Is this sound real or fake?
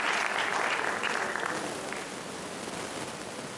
real